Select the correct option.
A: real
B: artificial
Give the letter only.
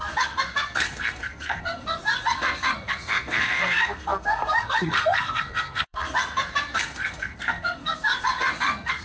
B